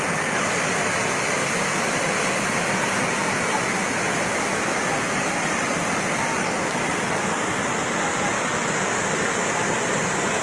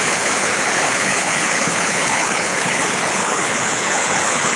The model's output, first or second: second